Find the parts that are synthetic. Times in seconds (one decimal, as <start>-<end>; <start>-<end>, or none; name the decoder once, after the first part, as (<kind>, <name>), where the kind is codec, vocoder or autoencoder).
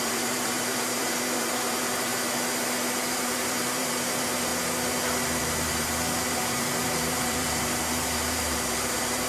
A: 0.0-2.1 (vocoder, BigVGAN v2); 3.1-4.5; 5.4-9.3